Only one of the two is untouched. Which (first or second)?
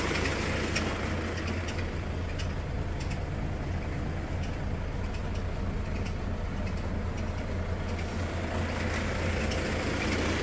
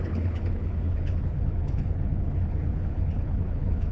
first